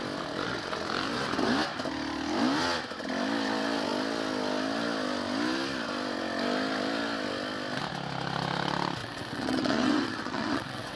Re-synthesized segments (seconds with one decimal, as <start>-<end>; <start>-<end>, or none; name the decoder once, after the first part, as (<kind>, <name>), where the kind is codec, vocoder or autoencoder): 9.0-11.0 (vocoder, WaveNeXt)